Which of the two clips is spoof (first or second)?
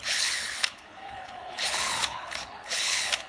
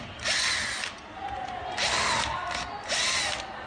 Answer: first